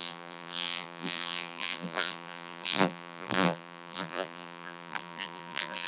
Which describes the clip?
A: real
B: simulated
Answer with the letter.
B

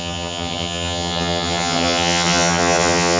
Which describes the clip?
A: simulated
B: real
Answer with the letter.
A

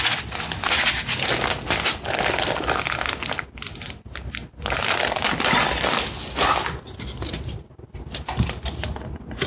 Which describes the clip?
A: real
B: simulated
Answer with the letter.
A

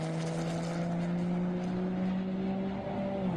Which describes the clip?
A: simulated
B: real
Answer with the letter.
B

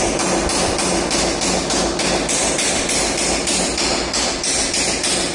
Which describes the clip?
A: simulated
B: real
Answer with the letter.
B